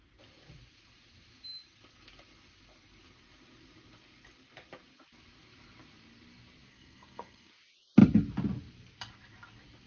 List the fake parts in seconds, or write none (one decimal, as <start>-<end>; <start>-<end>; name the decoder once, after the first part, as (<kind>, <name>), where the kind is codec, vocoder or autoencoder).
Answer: 6.7-7.5 (codec, SNAC)